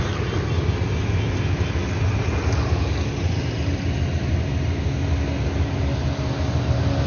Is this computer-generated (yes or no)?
no